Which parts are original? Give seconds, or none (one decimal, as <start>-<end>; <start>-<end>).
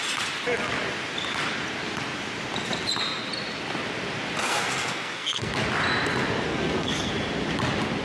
0.0-4.4; 5.5-6.5; 7.1-8.0